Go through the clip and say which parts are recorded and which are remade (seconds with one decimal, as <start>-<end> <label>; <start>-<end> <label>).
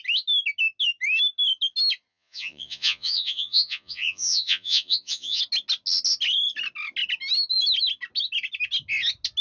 0.0-2.1 recorded; 2.1-5.4 remade; 5.4-9.4 recorded